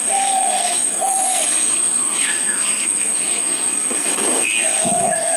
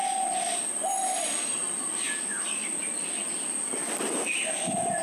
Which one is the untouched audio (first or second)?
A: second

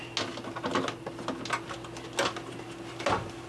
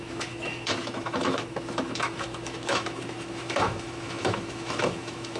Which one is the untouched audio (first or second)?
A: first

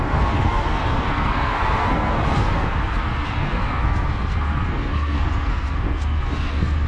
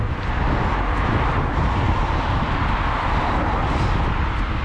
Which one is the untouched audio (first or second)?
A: second